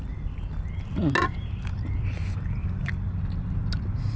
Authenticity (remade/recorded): recorded